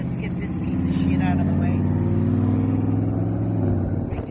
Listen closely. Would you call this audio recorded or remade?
recorded